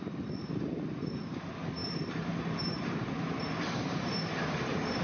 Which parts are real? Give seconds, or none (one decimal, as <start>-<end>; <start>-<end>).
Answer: 0.0-1.8